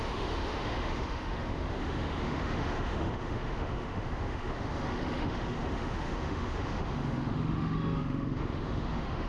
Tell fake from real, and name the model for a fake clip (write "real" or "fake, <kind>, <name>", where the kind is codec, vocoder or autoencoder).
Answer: fake, autoencoder, DAC-VAE